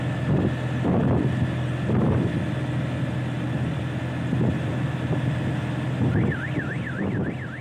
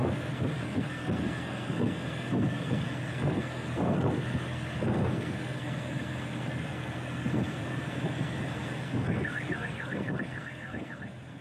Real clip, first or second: first